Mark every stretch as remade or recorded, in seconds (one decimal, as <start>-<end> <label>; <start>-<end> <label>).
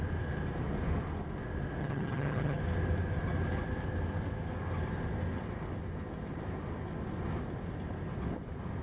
0.0-1.8 recorded; 1.8-2.6 remade; 2.6-8.8 recorded